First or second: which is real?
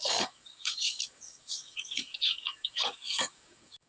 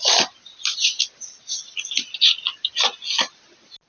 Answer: second